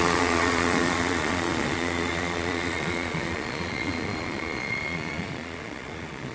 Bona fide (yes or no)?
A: no